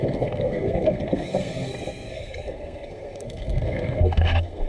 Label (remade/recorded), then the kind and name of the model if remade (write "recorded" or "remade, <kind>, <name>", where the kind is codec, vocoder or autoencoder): remade, codec, SNAC